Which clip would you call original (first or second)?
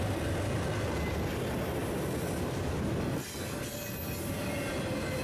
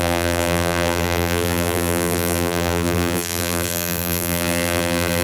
first